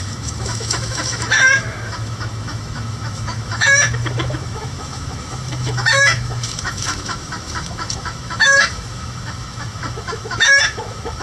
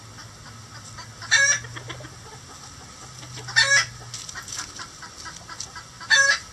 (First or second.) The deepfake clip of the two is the first